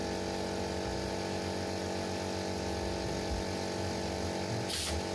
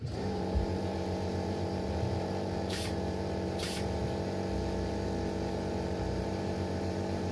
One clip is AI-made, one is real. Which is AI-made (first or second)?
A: second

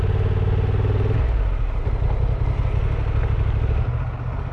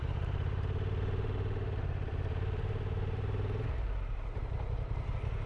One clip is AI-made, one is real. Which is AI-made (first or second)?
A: second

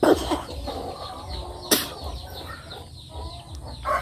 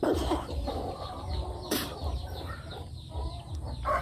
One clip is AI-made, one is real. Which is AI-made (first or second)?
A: second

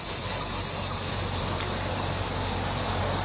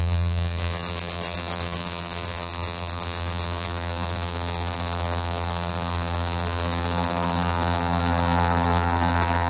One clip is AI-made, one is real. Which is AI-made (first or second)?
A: second